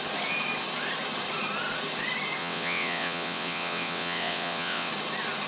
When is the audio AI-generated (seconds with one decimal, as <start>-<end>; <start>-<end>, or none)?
2.4-4.9